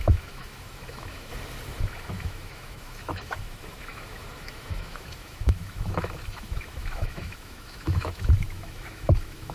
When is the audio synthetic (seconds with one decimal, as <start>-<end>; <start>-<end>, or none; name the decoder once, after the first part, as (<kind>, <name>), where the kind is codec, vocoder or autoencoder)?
0.0-1.3 (autoencoder, DAC-VAE); 1.8-9.5